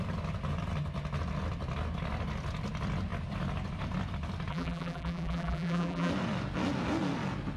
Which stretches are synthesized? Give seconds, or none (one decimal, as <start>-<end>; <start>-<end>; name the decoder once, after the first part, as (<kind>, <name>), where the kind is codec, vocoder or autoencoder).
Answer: 4.5-6.1 (vocoder, BigVGAN v2)